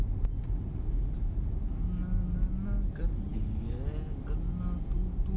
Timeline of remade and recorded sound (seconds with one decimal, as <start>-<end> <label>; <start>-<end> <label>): 0.0-3.3 recorded; 3.3-3.8 remade; 3.8-5.4 recorded